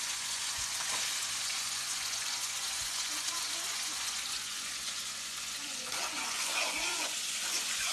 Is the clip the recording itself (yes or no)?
no